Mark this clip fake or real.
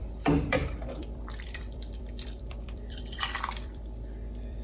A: fake